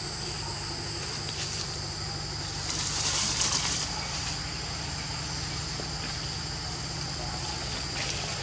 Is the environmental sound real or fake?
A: real